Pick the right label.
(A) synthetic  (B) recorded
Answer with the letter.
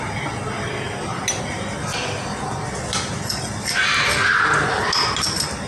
B